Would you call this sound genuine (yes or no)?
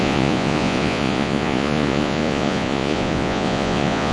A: no